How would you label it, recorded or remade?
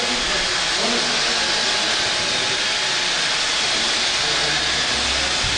recorded